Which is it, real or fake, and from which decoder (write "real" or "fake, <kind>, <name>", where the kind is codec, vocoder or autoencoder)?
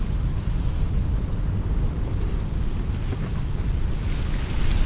real